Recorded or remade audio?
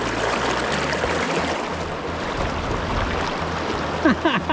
recorded